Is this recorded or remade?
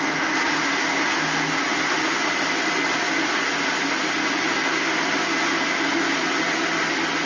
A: recorded